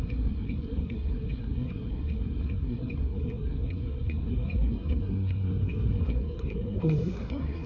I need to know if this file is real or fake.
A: fake